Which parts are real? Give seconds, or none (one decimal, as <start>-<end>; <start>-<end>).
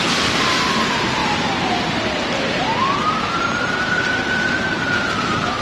none